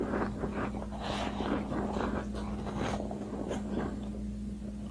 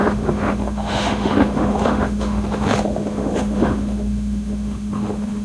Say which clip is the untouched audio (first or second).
first